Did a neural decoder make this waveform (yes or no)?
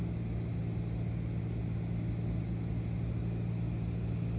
no